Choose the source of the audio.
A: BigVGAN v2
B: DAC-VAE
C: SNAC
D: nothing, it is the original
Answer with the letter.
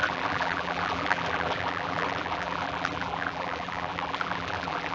A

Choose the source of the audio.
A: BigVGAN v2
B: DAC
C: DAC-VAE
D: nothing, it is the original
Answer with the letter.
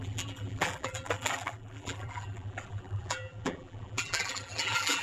A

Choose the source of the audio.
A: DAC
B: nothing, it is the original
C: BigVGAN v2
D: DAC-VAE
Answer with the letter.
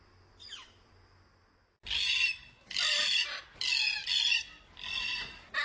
B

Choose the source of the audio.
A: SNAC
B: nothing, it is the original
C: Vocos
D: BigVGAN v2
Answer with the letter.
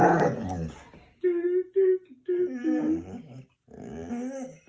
B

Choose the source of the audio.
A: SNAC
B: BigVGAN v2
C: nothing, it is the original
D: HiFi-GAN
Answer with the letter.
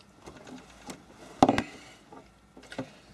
C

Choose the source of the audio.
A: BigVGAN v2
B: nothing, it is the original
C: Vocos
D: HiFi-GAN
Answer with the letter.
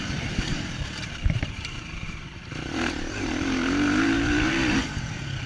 A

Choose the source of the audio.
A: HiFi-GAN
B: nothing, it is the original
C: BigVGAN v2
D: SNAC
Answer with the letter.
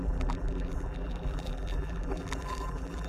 C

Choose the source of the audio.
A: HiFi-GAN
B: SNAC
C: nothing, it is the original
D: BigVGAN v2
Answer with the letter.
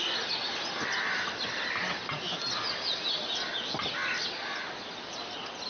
C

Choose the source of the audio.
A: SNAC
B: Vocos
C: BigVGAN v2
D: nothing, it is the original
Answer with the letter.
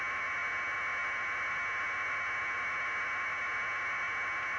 D